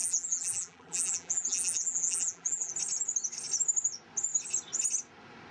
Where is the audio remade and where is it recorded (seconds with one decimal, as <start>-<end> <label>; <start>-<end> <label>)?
0.0-2.7 remade; 2.7-5.5 recorded